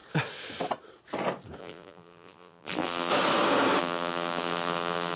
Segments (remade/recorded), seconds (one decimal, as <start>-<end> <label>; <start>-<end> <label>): 0.0-1.6 recorded; 1.6-3.1 remade; 3.1-3.8 recorded; 3.8-5.2 remade